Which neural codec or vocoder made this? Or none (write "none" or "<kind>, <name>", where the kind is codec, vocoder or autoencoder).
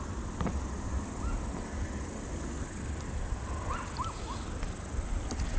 none